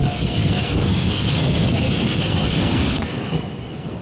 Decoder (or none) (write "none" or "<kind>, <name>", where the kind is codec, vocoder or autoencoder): codec, SNAC